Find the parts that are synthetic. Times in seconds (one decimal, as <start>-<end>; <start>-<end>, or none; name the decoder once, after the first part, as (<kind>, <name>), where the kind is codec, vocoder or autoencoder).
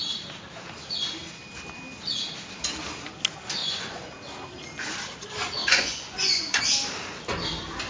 3.6-4.1 (vocoder, Vocos); 5.6-6.6